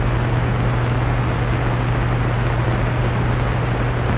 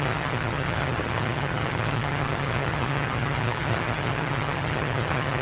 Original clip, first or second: first